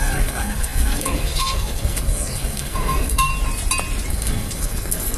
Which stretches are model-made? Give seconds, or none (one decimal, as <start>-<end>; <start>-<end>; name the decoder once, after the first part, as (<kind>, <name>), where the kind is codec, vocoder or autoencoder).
0.0-3.3 (codec, SNAC); 4.1-5.2